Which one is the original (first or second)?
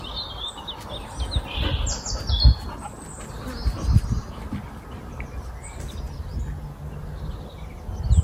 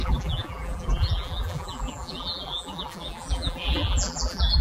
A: first